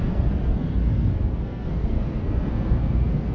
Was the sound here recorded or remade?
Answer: remade